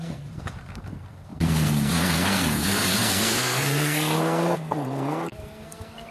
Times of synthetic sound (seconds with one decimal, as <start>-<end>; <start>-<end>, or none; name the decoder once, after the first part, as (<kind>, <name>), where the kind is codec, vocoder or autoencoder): 0.0-6.1 (codec, SNAC)